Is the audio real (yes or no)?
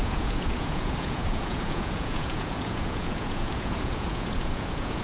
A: no